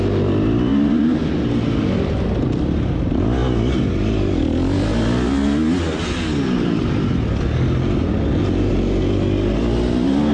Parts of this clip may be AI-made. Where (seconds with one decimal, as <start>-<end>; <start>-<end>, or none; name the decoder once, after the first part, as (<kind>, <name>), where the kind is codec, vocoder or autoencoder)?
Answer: none

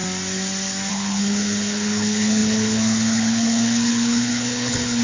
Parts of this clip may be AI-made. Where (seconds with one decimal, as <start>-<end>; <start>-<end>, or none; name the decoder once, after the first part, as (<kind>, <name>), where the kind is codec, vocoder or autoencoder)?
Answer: 0.9-5.0 (codec, HILCodec)

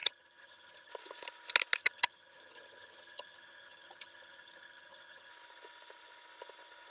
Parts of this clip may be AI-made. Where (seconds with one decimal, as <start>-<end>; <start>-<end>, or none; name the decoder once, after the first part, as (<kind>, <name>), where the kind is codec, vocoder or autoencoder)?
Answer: 0.0-0.9 (vocoder, HiFi-GAN); 1.8-5.3

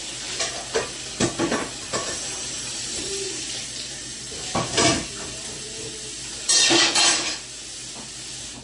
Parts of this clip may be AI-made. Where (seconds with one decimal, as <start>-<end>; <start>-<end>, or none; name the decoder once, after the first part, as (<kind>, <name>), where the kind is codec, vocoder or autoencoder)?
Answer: 2.0-4.2 (vocoder, BigVGAN v2)